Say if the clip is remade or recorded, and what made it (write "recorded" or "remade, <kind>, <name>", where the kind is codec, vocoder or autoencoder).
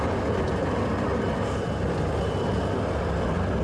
recorded